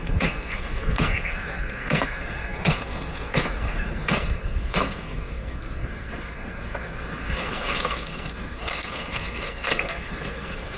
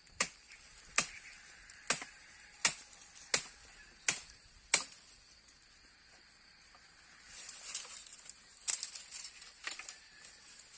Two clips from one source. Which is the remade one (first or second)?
first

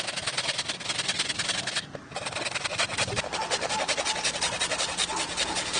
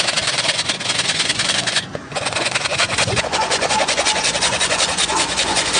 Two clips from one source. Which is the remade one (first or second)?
second